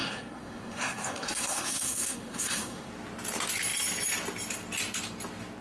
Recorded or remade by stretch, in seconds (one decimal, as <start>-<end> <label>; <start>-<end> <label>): 0.0-2.9 remade; 2.9-5.6 recorded